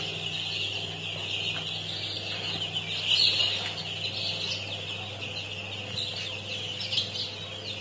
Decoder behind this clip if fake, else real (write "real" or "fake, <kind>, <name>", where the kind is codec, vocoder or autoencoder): real